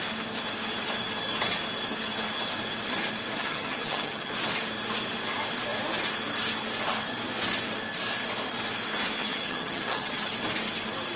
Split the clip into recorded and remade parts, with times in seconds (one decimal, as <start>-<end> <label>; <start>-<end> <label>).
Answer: 0.0-3.4 recorded; 3.4-4.3 remade; 4.3-9.2 recorded; 9.2-10.3 remade; 10.3-11.2 recorded